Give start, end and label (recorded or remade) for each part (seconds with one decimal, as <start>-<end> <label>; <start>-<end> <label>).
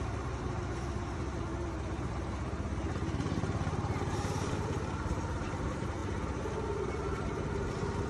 0.0-6.0 remade; 6.0-8.1 recorded